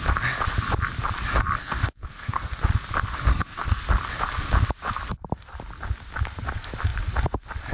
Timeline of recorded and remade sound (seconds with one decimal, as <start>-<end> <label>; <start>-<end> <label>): 0.0-1.6 recorded; 1.6-2.6 remade; 2.6-3.3 recorded; 3.3-3.8 remade; 3.8-7.7 recorded